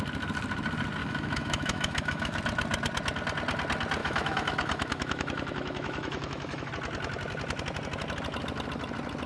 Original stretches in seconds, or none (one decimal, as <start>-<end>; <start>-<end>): 0.0-1.0; 2.4-4.0; 6.7-9.3